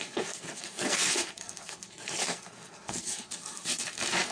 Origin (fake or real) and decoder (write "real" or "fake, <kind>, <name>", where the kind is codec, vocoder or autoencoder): fake, codec, SNAC